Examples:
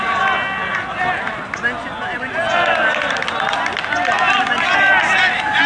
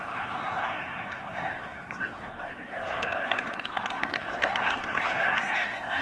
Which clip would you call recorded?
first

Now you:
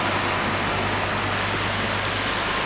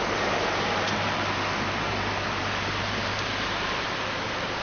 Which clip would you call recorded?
first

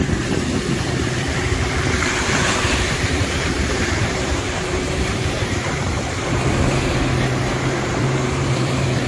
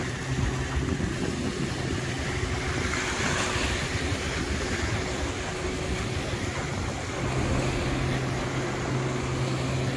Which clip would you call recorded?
second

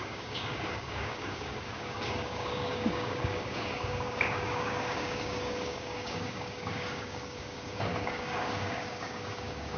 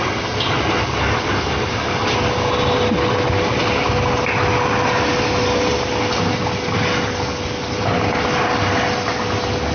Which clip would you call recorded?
second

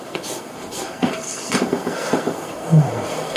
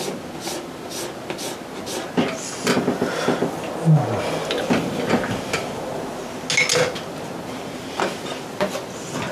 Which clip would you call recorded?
second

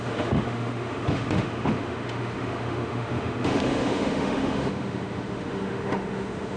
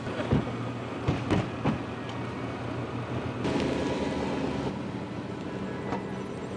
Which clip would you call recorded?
second